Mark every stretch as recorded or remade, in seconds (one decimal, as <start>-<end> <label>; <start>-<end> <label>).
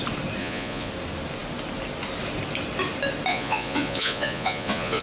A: 0.0-0.4 recorded; 0.4-0.9 remade; 0.9-3.3 recorded; 3.3-5.0 remade